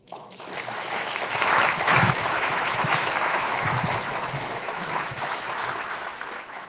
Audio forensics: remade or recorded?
remade